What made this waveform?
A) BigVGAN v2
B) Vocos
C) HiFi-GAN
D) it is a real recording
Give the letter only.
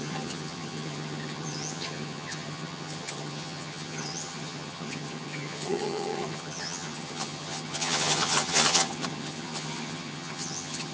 C